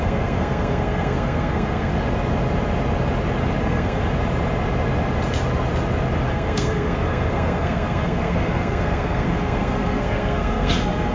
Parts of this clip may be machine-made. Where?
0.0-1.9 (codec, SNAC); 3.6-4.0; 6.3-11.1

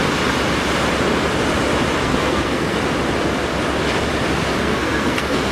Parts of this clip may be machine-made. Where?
2.0-2.8 (codec, SNAC); 4.6-5.5

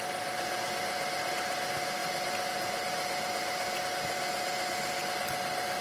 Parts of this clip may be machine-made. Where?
none

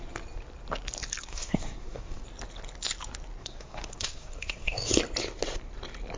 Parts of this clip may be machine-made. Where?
1.3-2.2 (codec, SNAC); 3.4-4.9

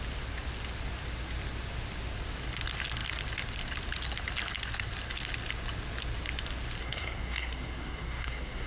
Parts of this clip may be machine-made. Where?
6.8-8.7 (codec, SNAC)

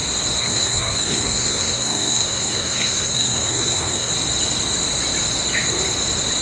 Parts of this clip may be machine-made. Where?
0.4-4.1 (codec, SNAC)